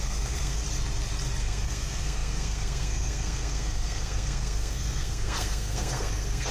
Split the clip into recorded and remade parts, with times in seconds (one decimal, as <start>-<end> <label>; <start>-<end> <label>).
0.0-0.6 remade; 0.6-1.4 recorded; 1.4-6.5 remade